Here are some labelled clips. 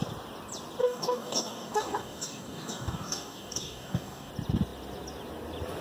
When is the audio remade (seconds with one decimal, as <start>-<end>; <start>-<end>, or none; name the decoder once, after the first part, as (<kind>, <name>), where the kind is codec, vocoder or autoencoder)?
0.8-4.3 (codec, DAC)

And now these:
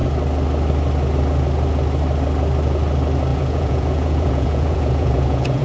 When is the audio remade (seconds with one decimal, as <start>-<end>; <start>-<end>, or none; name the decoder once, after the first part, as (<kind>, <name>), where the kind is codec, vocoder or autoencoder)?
3.3-5.6 (vocoder, Vocos)

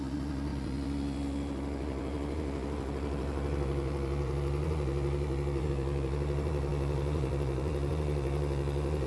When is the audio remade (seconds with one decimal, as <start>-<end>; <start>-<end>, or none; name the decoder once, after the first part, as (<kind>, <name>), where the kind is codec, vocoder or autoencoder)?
0.0-9.1 (vocoder, Vocos)